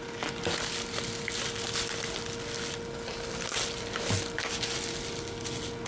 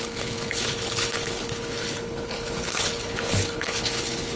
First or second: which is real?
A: first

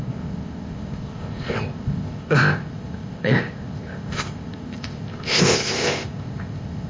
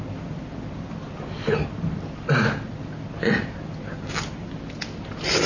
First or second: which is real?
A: second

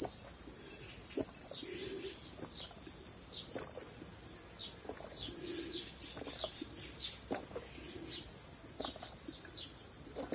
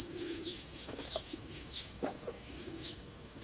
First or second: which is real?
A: first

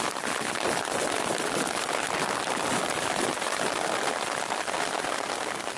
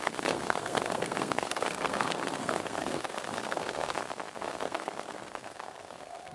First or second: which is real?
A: first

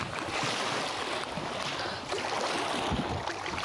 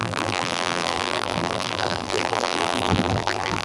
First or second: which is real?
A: first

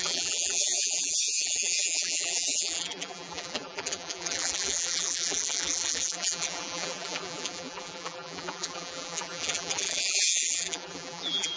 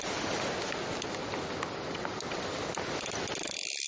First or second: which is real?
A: second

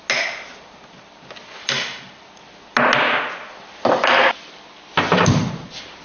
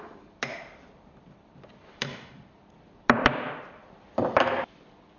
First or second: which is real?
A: first